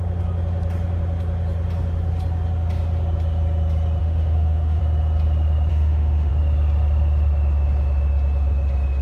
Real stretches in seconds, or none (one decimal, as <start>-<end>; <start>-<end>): 0.0-4.0; 4.8-5.7; 6.3-9.0